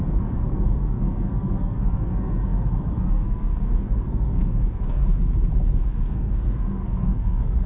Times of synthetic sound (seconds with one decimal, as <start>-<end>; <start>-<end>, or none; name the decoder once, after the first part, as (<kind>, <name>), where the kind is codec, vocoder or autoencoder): 0.0-5.0 (codec, SNAC); 5.7-7.7